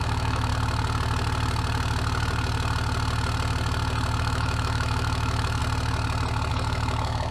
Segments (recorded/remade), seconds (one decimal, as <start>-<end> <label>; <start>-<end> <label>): 0.0-0.5 remade; 0.5-4.2 recorded; 4.2-5.6 remade; 5.6-6.5 recorded; 6.5-7.3 remade